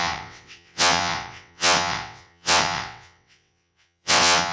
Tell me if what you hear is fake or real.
fake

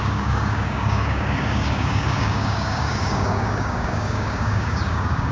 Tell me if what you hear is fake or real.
fake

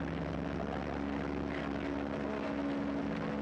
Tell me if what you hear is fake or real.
real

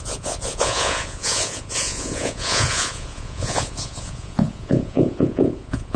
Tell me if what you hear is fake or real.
fake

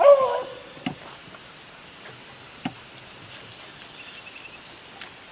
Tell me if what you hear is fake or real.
real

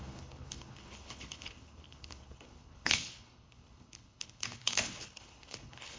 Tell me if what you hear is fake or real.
fake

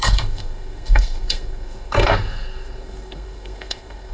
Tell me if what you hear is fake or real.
fake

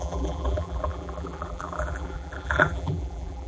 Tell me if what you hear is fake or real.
fake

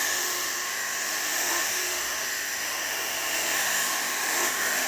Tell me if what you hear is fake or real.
fake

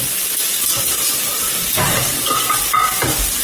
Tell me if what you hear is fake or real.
real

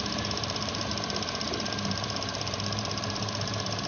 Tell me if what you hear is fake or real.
fake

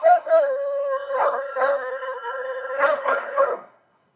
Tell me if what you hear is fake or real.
fake